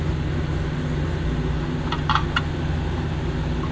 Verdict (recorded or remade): recorded